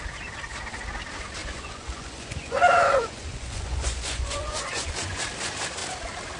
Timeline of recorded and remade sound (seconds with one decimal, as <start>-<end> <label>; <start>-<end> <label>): 0.0-1.4 recorded; 1.4-5.2 remade; 5.2-6.4 recorded